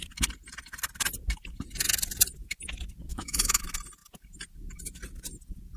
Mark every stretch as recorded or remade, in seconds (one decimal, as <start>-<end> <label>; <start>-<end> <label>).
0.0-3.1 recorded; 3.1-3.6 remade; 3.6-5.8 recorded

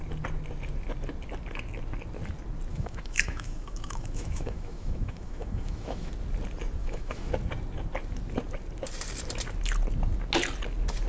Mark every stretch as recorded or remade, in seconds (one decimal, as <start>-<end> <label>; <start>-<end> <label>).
0.0-2.7 recorded; 2.7-6.1 remade; 6.1-6.8 recorded; 6.8-7.3 remade; 7.3-11.1 recorded

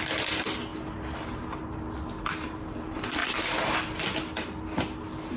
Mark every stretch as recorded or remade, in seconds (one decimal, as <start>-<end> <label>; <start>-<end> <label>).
0.0-5.4 recorded